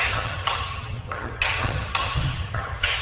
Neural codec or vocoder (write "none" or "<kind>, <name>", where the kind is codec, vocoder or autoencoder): vocoder, HiFi-GAN